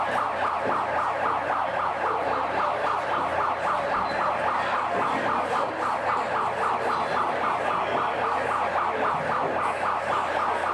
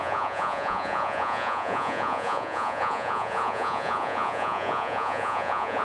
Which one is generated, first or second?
second